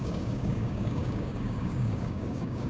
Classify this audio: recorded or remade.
remade